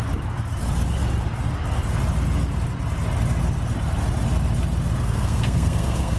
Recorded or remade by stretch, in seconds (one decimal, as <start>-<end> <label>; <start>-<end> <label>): 0.0-5.0 recorded; 5.0-6.2 remade